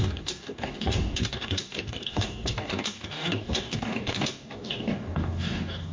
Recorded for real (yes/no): no